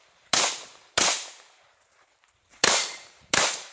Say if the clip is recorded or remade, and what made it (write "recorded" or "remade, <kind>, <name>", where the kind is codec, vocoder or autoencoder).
remade, vocoder, BigVGAN v2